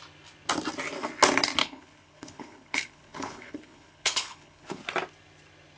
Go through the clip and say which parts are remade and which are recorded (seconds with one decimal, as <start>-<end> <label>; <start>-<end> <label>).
0.0-1.6 recorded; 1.6-4.8 remade; 4.8-5.8 recorded